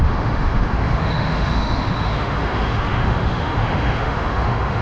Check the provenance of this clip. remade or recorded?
remade